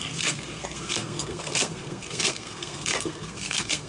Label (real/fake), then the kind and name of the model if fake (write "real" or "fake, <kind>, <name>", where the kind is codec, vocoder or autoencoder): fake, codec, SNAC